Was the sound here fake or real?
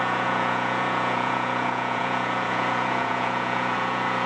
fake